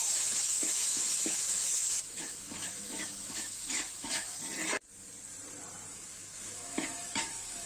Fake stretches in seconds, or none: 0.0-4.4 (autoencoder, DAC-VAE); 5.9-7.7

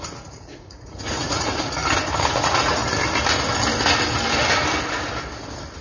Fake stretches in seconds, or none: 0.0-1.8 (vocoder, Vocos); 2.3-2.8

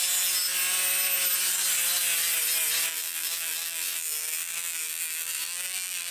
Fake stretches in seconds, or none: 2.9-6.1 (vocoder, BigVGAN v2)

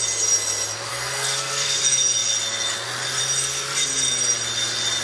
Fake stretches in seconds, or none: 0.9-1.8 (codec, SNAC)

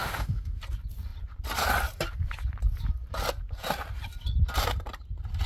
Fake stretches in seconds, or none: 0.0-0.6 (autoencoder, DAC-VAE)

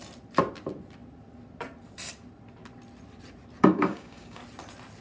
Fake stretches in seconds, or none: 3.6-4.4 (codec, DAC)

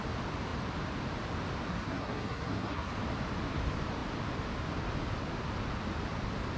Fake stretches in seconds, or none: 1.7-2.9 (codec, SNAC)